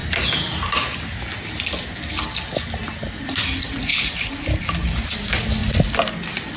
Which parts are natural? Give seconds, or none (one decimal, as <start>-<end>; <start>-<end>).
0.0-6.6